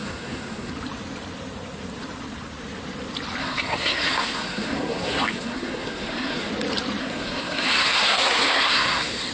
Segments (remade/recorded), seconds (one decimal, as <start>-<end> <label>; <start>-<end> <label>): 0.0-0.7 remade; 0.7-3.4 recorded; 3.4-6.5 remade; 6.5-7.0 recorded; 7.0-9.3 remade